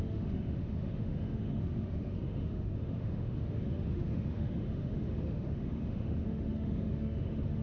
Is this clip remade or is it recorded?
remade